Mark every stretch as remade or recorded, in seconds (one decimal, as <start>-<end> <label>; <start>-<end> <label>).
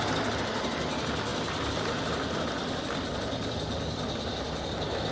0.0-1.3 recorded; 1.3-4.4 remade; 4.4-5.1 recorded